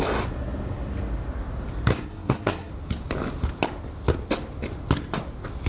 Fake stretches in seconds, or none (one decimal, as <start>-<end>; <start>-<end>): 1.9-2.7